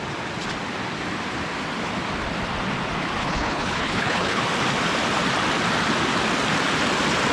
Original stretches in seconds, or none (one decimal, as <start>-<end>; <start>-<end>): 0.0-3.2; 4.4-7.3